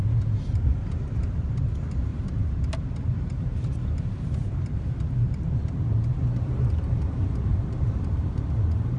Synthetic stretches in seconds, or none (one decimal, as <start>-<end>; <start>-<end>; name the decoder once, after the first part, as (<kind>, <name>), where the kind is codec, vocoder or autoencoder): 2.1-6.9 (vocoder, BigVGAN v2); 7.5-8.3